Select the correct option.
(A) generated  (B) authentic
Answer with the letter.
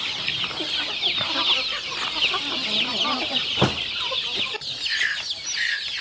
B